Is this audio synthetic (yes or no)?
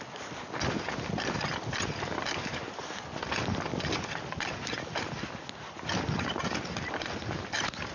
no